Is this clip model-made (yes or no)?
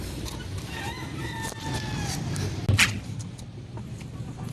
no